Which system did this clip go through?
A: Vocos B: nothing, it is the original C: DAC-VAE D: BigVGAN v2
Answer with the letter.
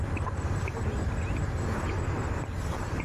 B